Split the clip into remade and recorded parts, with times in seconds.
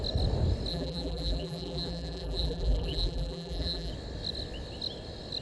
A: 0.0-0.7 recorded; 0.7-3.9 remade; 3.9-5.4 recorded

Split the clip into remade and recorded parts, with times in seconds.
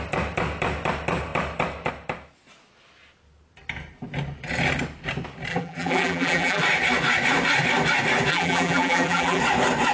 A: 0.0-5.5 recorded; 5.5-6.6 remade; 6.6-8.3 recorded; 8.3-9.4 remade; 9.4-9.9 recorded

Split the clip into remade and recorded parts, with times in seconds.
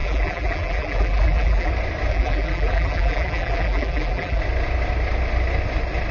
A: 0.0-1.7 remade; 1.7-2.1 recorded; 2.1-4.4 remade; 4.4-6.1 recorded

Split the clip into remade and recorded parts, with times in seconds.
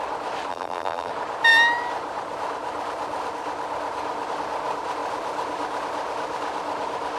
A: 0.0-0.5 recorded; 0.5-1.1 remade; 1.1-7.2 recorded